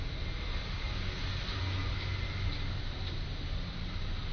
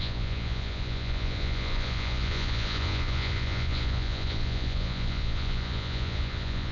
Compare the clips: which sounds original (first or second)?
first